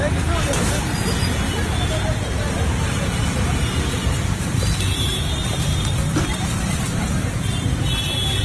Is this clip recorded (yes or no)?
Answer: no